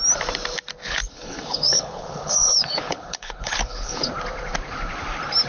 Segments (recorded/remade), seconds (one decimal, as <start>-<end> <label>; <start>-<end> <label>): 0.0-0.8 recorded; 0.8-4.1 remade; 4.1-5.5 recorded